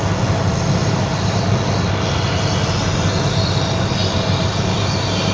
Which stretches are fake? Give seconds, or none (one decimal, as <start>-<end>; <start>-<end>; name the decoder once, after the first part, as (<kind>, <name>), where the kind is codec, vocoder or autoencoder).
0.8-1.5 (vocoder, BigVGAN v2)